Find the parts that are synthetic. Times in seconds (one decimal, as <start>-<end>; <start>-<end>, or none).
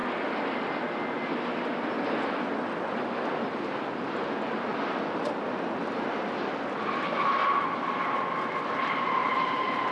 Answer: none